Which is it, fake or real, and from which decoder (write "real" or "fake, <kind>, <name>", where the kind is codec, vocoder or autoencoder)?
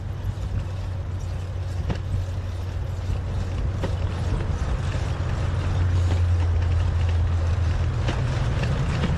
real